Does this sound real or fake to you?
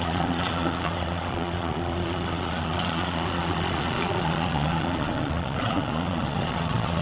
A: fake